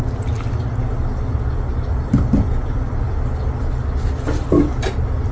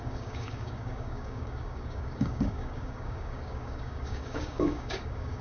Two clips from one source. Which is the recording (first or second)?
first